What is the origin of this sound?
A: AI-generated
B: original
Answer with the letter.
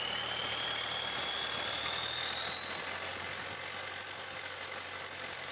B